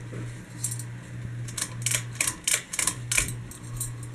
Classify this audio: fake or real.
real